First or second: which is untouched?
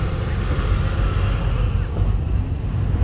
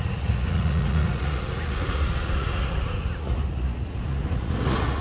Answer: first